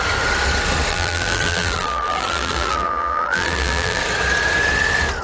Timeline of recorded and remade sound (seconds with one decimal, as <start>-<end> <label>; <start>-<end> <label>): 0.0-0.9 recorded; 0.9-4.0 remade; 4.0-5.2 recorded